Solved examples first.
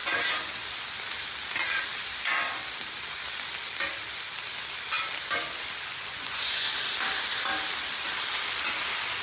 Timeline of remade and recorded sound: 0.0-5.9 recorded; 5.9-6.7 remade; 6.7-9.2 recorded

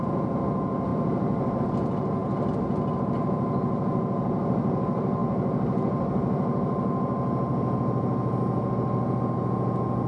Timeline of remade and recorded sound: 0.0-0.9 recorded; 0.9-1.6 remade; 1.6-10.1 recorded

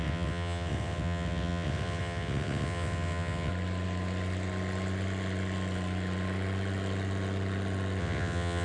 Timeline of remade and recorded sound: 0.0-3.5 remade; 3.5-8.0 recorded; 8.0-8.6 remade